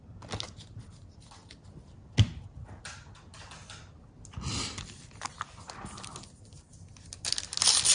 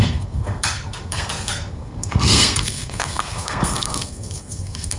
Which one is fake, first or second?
second